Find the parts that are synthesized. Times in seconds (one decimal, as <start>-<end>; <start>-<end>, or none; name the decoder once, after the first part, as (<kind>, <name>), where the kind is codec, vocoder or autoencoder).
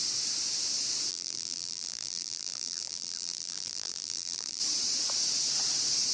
1.1-4.6 (vocoder, BigVGAN v2)